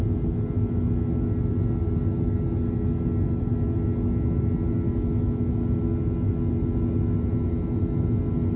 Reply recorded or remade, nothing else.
recorded